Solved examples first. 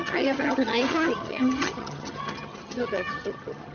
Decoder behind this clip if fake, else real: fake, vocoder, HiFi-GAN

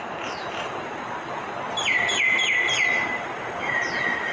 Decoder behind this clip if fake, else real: real